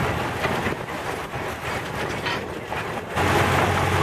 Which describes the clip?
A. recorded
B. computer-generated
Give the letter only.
A